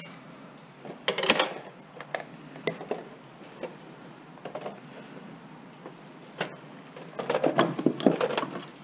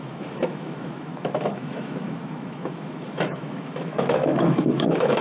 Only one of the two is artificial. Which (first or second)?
second